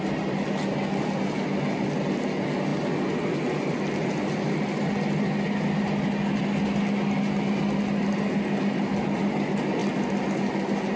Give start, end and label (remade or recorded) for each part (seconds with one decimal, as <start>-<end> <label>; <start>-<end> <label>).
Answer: 0.0-11.0 recorded